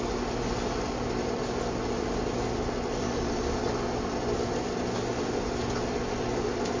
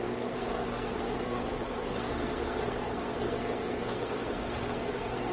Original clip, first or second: first